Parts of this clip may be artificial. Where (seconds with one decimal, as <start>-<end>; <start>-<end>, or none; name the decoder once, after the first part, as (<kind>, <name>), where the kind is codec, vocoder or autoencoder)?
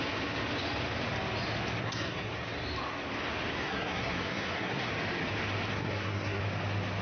1.8-2.3 (codec, SNAC); 3.6-4.9; 5.7-6.4